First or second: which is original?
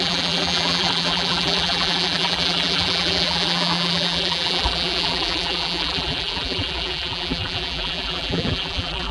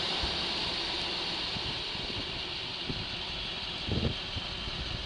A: second